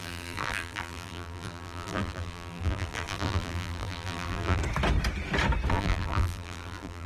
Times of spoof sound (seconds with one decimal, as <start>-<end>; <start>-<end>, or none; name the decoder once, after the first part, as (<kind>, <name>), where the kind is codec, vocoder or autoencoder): 0.0-4.6 (vocoder, BigVGAN v2); 5.7-7.1